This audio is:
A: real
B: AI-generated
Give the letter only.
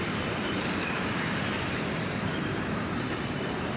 B